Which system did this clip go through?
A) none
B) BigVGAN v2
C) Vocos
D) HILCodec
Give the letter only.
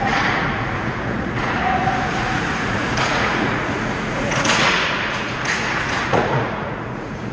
C